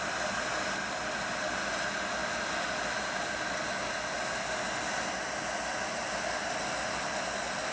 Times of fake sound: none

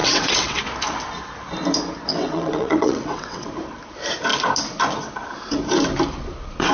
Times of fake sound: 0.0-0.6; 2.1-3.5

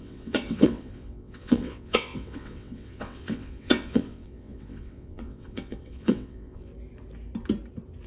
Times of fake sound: 0.0-6.7

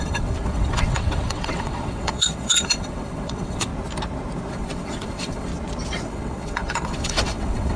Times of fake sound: 0.0-3.7; 4.5-5.5; 6.0-7.8

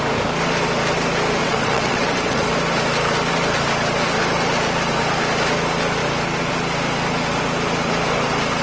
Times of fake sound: 1.4-2.4

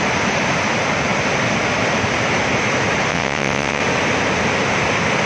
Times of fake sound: 3.1-3.8